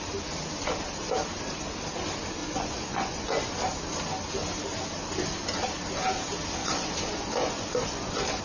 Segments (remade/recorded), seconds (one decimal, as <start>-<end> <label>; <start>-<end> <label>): 0.0-2.4 recorded; 2.4-3.5 remade; 3.5-6.6 recorded; 6.6-8.4 remade